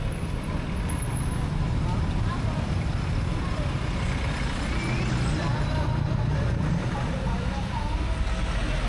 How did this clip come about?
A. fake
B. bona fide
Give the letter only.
B